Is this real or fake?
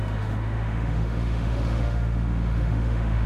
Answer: fake